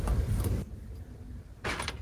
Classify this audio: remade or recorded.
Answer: recorded